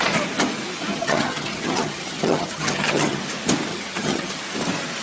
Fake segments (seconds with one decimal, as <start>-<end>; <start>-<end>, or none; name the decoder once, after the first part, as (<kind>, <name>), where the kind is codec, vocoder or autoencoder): 0.9-3.2 (vocoder, HiFi-GAN); 3.7-4.4